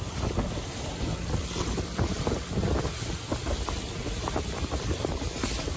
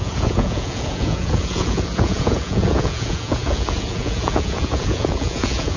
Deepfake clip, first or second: second